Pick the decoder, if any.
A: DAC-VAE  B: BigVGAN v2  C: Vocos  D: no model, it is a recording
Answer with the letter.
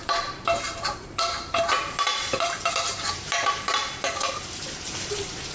B